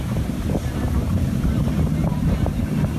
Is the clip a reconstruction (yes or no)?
yes